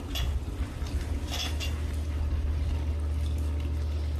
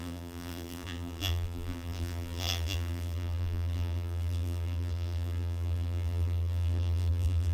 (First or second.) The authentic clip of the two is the first